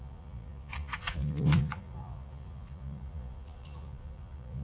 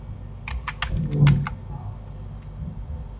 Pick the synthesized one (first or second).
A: first